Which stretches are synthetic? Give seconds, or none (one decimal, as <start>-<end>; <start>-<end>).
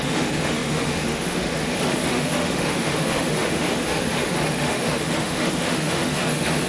0.0-6.7